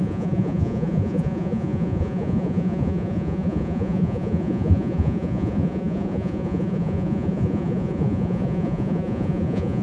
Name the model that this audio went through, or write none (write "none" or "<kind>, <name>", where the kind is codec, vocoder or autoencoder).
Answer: vocoder, Vocos